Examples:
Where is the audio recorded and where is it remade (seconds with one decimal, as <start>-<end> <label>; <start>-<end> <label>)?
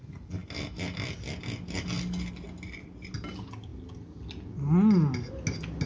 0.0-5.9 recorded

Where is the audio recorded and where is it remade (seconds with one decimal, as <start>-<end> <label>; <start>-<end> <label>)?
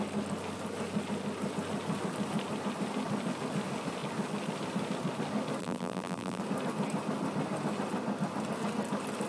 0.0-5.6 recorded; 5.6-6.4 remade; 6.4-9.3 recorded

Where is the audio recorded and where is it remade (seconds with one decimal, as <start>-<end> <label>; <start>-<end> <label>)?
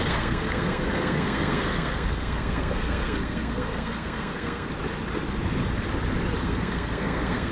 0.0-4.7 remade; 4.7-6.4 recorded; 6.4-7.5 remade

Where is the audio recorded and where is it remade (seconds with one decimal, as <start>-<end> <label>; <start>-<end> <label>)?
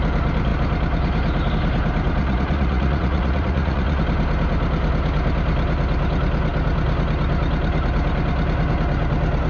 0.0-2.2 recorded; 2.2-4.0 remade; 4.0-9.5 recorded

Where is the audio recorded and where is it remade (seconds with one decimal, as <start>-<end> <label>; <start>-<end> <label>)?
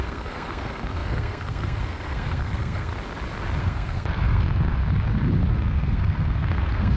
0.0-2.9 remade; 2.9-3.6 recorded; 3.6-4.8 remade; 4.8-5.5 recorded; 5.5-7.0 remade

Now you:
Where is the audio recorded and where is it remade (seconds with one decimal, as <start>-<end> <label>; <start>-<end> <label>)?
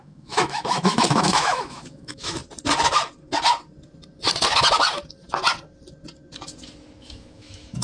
0.0-2.4 remade; 2.4-7.0 recorded; 7.0-7.8 remade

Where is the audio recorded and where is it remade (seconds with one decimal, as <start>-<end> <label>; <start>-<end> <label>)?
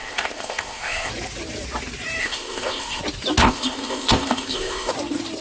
0.0-1.1 remade; 1.1-2.2 recorded; 2.2-3.0 remade; 3.0-3.4 recorded; 3.4-4.9 remade; 4.9-5.4 recorded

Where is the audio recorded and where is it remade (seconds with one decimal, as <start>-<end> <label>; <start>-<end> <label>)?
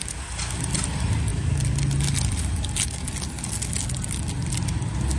0.0-5.2 recorded